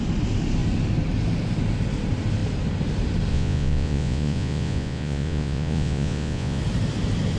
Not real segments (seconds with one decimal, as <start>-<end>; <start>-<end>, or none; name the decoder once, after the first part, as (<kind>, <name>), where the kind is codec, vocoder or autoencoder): 3.3-6.6 (vocoder, Vocos)